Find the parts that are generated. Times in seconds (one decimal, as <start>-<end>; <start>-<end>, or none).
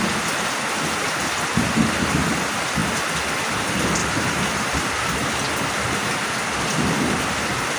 4.0-5.0